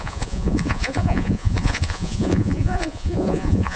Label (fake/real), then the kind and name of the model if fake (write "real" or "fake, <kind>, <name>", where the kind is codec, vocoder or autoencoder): fake, vocoder, Vocos